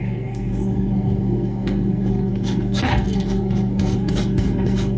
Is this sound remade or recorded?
remade